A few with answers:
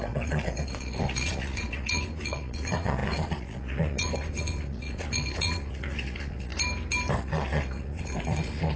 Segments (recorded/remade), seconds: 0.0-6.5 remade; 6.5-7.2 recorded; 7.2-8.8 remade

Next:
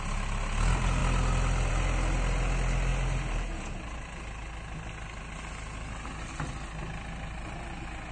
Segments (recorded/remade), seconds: 0.0-8.1 recorded

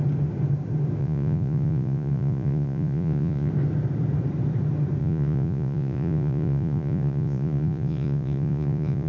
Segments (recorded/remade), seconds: 0.0-1.0 recorded; 1.0-3.5 remade; 3.5-5.0 recorded; 5.0-9.1 remade

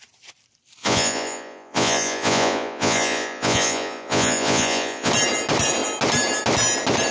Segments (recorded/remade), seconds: 0.0-0.8 recorded; 0.8-5.1 remade; 5.1-7.1 recorded

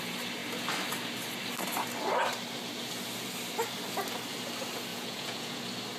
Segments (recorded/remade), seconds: 0.0-4.9 recorded; 4.9-5.6 remade; 5.6-6.0 recorded